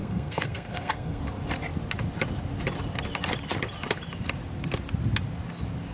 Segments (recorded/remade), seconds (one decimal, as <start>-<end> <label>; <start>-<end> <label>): 0.0-1.2 remade; 1.2-5.9 recorded